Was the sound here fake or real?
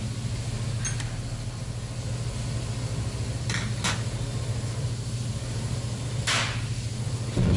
real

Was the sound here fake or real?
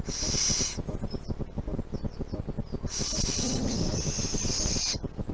real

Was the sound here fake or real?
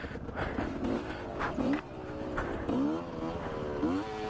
real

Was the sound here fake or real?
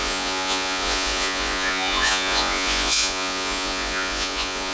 fake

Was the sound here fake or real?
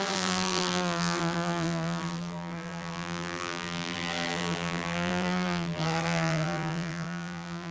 fake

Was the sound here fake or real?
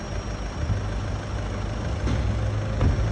real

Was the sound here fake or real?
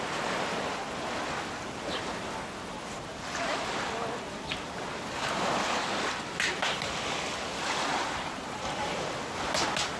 real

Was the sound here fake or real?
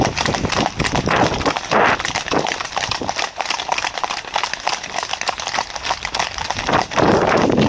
real